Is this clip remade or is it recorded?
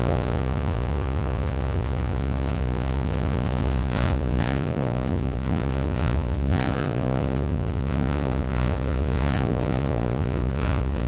remade